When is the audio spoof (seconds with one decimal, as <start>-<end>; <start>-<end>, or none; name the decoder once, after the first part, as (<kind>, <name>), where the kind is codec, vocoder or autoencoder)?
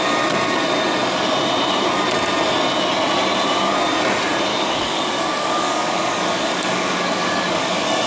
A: 4.5-8.1 (codec, DAC)